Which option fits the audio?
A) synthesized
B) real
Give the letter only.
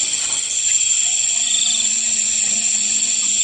A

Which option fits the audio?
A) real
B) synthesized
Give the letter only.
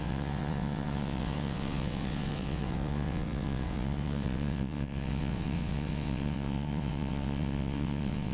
B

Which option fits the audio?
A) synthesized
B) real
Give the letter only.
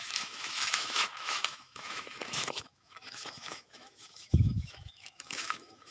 A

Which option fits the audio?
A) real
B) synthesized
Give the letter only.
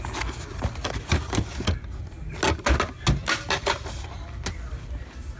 A